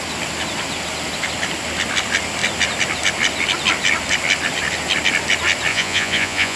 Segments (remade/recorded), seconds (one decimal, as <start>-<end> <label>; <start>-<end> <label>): 0.0-5.7 recorded; 5.7-6.6 remade